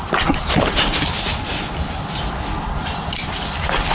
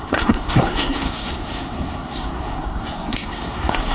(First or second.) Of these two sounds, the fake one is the second